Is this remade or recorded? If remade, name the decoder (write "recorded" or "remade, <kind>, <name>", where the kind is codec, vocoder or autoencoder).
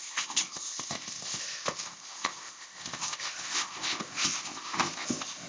remade, codec, ZipCodec